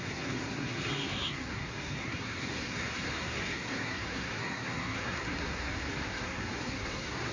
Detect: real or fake fake